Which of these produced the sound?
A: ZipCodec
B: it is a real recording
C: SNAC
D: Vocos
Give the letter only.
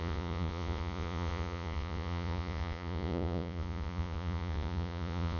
D